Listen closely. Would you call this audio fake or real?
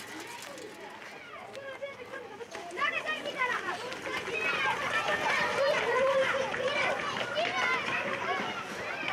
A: real